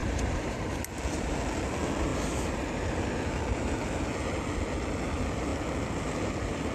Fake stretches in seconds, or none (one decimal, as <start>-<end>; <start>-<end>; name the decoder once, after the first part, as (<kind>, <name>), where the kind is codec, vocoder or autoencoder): 0.0-0.8 (vocoder, BigVGAN v2)